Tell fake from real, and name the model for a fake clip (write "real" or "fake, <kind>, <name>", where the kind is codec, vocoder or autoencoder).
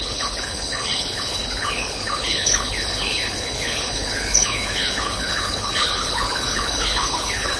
fake, codec, HILCodec